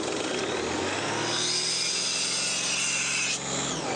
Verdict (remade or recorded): recorded